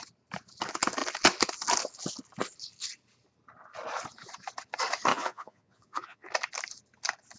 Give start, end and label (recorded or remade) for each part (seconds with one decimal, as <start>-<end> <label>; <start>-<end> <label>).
0.0-5.1 recorded; 5.1-6.3 remade; 6.3-7.4 recorded